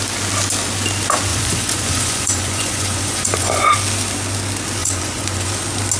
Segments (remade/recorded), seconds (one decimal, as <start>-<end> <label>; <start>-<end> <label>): 0.0-1.3 recorded; 1.3-3.7 remade; 3.7-4.8 recorded; 4.8-5.5 remade; 5.5-6.0 recorded